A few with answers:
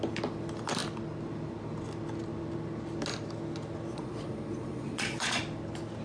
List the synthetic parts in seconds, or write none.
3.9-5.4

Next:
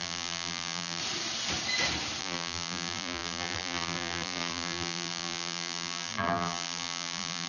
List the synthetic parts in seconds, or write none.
0.0-1.0; 2.2-7.5

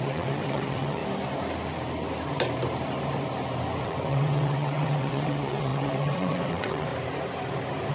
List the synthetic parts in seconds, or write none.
0.0-1.0; 3.8-6.9